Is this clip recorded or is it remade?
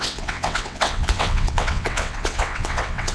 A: remade